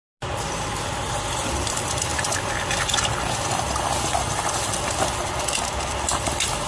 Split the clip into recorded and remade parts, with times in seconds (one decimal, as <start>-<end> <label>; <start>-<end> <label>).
0.0-6.7 recorded